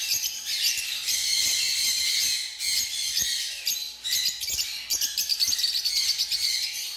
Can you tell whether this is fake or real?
real